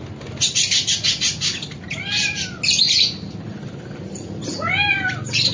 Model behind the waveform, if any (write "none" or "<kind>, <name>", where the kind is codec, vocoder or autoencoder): none